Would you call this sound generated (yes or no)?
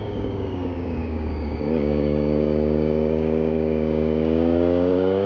yes